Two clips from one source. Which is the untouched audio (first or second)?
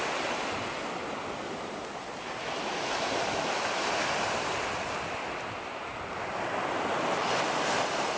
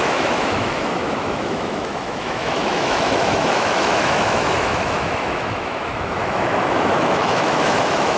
first